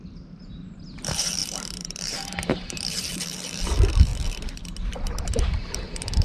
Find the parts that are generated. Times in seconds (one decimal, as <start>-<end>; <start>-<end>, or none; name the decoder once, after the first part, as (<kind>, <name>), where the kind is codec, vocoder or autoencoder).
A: 0.0-4.1 (vocoder, BigVGAN v2); 5.2-6.2